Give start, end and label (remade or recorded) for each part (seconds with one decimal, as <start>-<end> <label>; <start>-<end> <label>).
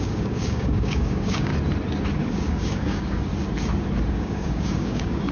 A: 0.0-1.5 remade; 1.5-2.2 recorded; 2.2-3.3 remade; 3.3-4.1 recorded; 4.1-5.3 remade